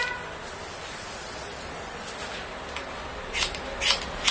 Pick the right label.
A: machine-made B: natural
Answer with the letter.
B